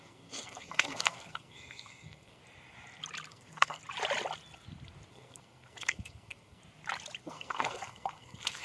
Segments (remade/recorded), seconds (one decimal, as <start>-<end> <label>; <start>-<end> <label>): 0.0-2.4 remade; 2.4-3.3 recorded; 3.3-3.8 remade; 3.8-5.1 recorded; 5.1-6.6 remade; 6.6-7.2 recorded; 7.2-8.6 remade